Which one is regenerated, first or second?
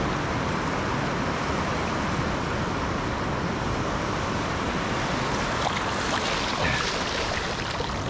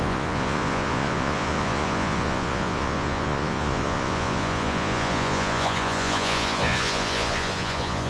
second